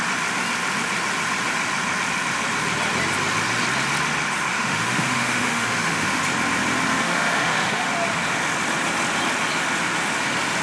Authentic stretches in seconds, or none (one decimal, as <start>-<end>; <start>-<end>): 0.0-4.5; 6.2-6.9; 7.9-10.6